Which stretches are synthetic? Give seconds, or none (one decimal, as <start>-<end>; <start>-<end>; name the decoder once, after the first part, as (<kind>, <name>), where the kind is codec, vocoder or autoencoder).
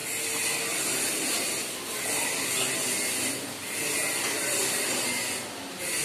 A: none